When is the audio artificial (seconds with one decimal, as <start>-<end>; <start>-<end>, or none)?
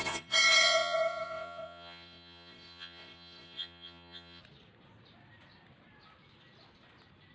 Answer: 0.0-4.4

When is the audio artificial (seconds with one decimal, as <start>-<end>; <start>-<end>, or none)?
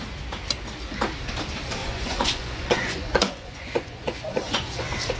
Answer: 1.8-4.8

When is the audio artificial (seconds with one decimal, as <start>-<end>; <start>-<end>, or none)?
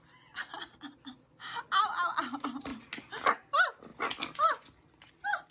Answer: none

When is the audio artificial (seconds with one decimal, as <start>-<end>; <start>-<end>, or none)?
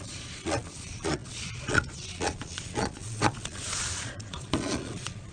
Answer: 0.0-5.3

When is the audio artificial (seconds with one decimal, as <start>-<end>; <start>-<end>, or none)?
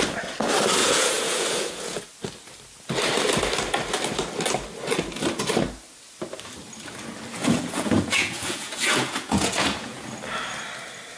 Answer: 0.8-2.0; 7.4-10.1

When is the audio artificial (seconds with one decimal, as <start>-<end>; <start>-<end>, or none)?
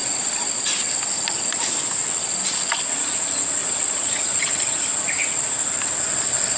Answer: 0.0-0.7; 3.6-4.7; 6.1-6.6